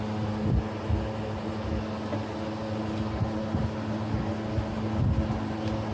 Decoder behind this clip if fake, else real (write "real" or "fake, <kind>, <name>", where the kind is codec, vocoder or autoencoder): real